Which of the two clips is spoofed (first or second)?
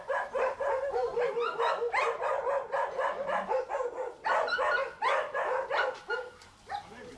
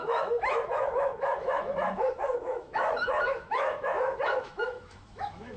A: second